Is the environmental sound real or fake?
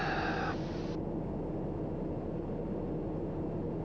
real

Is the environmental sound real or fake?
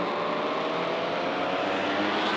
real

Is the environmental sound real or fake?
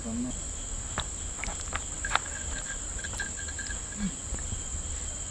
real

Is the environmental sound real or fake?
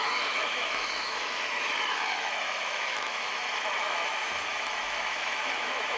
fake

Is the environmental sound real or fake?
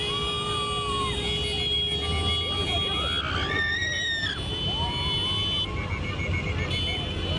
real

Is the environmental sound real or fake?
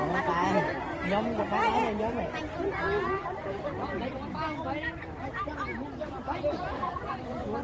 real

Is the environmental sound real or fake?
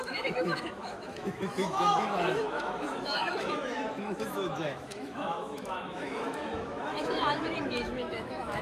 fake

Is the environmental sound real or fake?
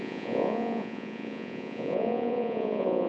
fake